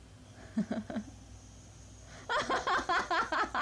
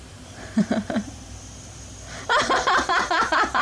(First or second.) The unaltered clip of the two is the first